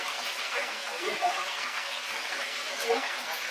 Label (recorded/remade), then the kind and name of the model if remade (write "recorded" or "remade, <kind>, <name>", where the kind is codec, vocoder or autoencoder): remade, codec, SNAC